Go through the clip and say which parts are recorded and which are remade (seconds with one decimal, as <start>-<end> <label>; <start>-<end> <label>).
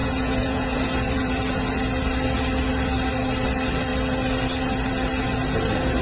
0.0-1.4 remade; 1.4-6.0 recorded